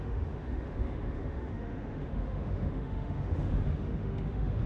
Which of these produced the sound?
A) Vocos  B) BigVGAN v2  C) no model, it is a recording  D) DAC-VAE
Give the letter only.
D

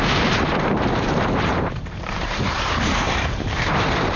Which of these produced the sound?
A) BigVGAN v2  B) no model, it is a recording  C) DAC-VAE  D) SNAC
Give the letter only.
A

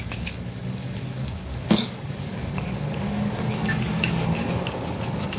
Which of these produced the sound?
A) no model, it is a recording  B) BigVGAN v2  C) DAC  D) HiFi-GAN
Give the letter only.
C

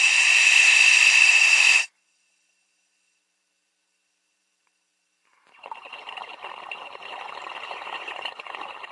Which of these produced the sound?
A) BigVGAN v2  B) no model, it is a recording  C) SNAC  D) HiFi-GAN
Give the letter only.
A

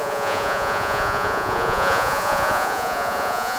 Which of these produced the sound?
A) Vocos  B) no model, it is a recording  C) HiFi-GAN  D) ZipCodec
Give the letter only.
A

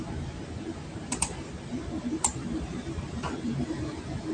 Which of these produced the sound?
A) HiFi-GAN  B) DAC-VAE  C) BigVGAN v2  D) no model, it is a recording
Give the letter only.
C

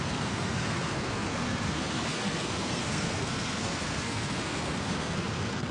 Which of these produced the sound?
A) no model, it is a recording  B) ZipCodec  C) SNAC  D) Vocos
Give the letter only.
C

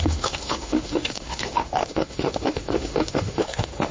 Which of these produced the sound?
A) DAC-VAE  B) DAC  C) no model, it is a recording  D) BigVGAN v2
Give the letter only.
A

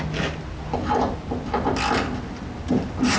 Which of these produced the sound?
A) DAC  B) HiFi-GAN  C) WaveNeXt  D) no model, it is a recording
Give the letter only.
D